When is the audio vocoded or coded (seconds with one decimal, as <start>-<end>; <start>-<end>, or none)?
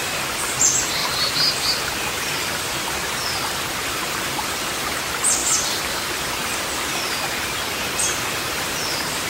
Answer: 1.0-5.0; 5.4-6.0